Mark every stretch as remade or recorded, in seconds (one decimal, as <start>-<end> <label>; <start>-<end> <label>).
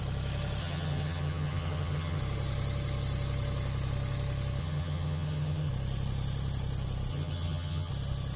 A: 0.0-0.6 recorded; 0.6-2.2 remade; 2.2-4.6 recorded; 4.6-5.7 remade; 5.7-7.1 recorded; 7.1-7.9 remade; 7.9-8.4 recorded